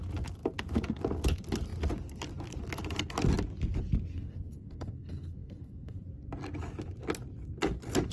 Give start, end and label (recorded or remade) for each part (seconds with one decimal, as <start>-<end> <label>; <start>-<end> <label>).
0.0-4.1 recorded; 4.1-6.0 remade; 6.0-8.1 recorded